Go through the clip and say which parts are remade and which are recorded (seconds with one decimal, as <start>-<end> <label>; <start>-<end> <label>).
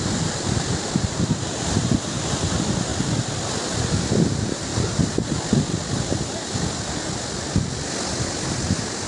0.0-2.9 remade; 2.9-3.8 recorded; 3.8-4.7 remade; 4.7-9.1 recorded